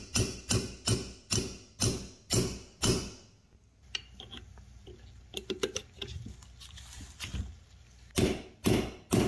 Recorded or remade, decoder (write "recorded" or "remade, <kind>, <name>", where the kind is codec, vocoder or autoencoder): recorded